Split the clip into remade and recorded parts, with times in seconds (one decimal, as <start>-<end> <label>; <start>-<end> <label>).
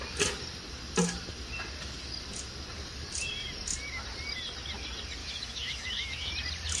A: 0.0-5.2 recorded; 5.2-6.3 remade; 6.3-6.8 recorded